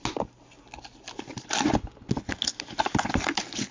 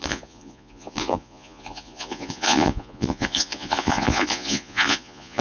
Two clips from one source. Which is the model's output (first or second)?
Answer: second